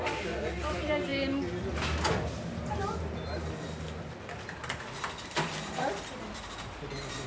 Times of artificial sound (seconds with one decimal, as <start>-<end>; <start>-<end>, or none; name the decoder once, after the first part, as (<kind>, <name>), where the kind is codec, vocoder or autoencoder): none